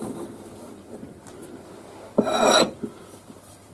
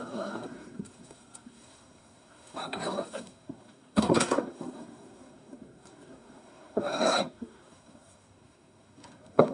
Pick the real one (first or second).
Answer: first